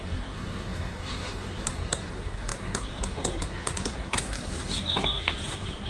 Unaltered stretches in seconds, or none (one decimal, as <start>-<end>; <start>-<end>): none